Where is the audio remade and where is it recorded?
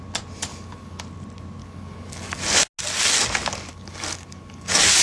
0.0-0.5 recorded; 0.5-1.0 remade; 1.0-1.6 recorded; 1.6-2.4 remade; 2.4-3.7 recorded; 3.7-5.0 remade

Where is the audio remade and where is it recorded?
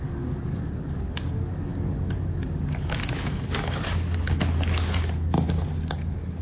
0.0-6.4 remade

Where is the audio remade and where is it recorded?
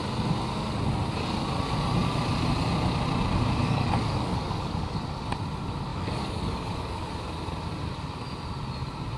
0.0-3.6 recorded; 3.6-5.0 remade; 5.0-5.9 recorded; 5.9-7.1 remade; 7.1-9.2 recorded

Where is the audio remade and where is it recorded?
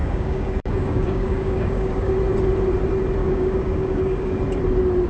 0.0-2.1 remade; 2.1-3.2 recorded; 3.2-4.4 remade; 4.4-5.1 recorded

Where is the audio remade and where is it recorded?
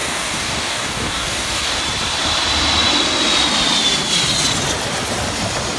0.0-1.8 remade; 1.8-5.8 recorded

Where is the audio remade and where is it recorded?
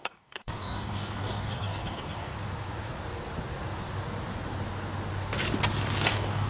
0.0-2.3 remade; 2.3-6.1 recorded; 6.1-6.5 remade